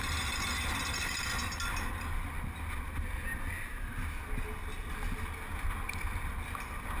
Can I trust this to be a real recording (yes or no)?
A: yes